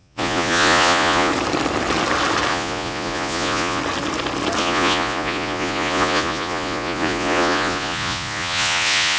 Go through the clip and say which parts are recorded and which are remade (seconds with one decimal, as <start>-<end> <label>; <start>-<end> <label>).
0.0-1.3 remade; 1.3-2.5 recorded; 2.5-3.8 remade; 3.8-4.6 recorded; 4.6-9.2 remade